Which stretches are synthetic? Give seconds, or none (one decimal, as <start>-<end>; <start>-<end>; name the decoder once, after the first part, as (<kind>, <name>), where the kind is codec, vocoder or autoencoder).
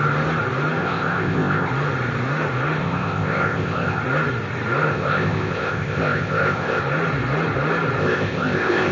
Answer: 0.8-1.7 (codec, ZipCodec); 2.8-4.0; 4.9-6.8; 8.0-8.9